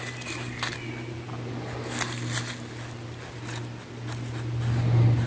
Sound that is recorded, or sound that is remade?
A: recorded